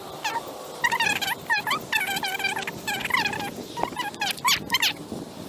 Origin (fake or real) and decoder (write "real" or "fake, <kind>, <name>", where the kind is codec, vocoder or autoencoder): real